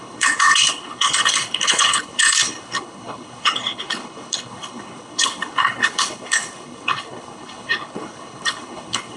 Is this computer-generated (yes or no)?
yes